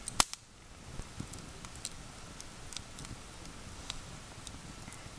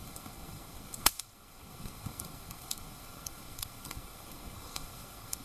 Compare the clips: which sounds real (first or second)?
first